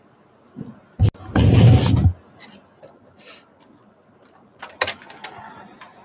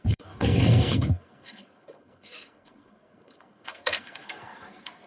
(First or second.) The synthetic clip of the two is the second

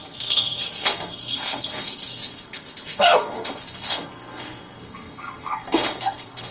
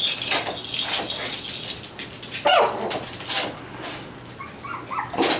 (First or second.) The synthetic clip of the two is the first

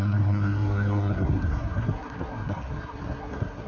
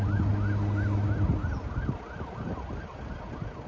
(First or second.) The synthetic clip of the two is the first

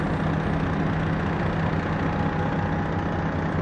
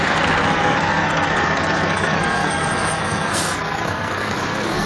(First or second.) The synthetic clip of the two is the second